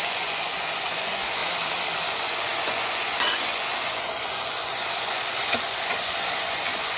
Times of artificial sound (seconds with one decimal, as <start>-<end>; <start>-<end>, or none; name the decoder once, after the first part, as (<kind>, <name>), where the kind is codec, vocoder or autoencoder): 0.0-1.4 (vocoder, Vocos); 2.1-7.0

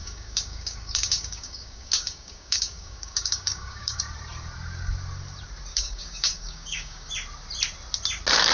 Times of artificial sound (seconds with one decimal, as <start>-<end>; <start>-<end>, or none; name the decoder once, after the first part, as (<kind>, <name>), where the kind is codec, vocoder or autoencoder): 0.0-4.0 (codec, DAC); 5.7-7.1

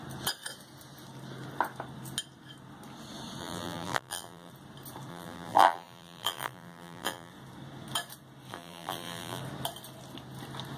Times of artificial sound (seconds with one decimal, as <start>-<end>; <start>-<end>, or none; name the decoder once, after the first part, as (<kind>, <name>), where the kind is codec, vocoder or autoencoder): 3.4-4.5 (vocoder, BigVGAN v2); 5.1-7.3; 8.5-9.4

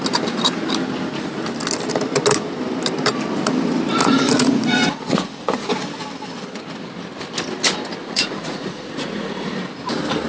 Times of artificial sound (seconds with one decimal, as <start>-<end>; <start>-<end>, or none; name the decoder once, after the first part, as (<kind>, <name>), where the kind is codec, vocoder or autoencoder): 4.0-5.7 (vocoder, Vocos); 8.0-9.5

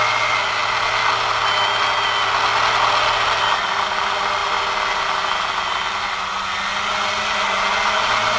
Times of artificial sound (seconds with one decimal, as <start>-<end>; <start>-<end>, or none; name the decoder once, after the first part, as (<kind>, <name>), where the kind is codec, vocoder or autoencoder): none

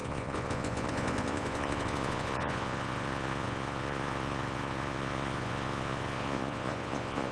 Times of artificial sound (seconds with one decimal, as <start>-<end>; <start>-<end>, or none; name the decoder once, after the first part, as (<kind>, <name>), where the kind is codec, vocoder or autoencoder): 0.0-7.3 (vocoder, Vocos)

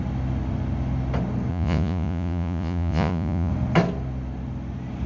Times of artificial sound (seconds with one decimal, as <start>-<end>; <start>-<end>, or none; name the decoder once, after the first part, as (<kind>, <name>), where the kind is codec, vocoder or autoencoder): 1.5-3.5 (vocoder, Vocos)

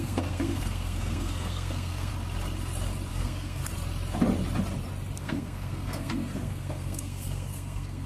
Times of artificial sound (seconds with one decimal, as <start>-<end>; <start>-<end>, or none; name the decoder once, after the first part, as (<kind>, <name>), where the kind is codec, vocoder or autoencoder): 0.0-2.1 (codec, SNAC); 3.1-3.6; 5.2-8.1